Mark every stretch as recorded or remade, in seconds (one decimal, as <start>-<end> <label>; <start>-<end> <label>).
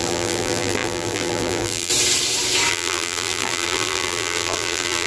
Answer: 0.0-1.9 remade; 1.9-2.7 recorded; 2.7-5.1 remade